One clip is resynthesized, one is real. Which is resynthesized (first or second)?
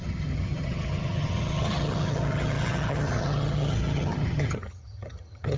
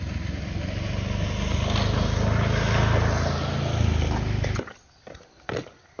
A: first